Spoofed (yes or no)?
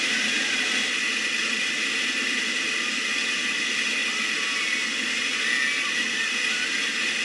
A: no